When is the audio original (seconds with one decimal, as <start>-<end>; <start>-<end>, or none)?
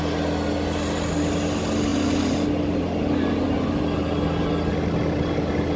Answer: 0.0-5.8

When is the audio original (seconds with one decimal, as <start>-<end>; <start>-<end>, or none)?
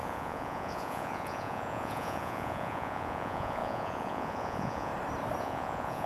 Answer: 4.9-5.4